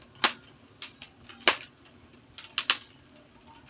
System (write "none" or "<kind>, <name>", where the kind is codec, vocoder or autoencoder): none